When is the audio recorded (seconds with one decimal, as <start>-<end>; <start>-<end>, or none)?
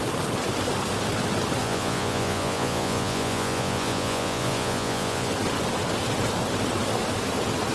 0.0-1.6; 5.3-7.7